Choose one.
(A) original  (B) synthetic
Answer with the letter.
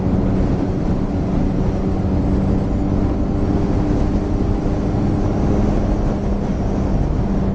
A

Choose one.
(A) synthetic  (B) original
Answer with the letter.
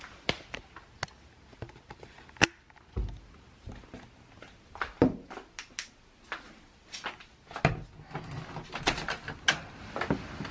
B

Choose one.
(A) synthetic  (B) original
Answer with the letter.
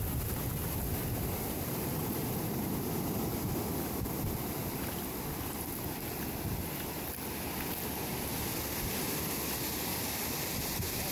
B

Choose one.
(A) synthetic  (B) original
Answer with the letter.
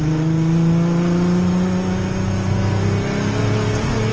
B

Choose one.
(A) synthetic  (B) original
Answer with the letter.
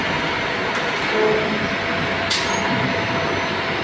B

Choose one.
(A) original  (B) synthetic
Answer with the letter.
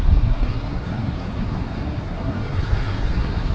B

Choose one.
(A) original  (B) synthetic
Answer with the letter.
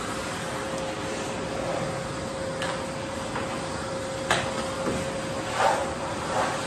A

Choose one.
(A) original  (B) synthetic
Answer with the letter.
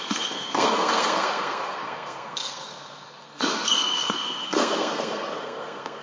B